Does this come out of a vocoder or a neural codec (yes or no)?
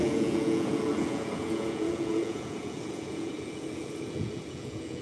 yes